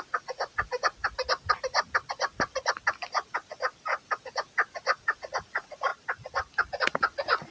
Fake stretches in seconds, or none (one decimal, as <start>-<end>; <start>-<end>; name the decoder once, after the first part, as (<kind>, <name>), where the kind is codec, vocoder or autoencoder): 0.0-1.0 (vocoder, Vocos); 5.0-5.9; 6.8-7.5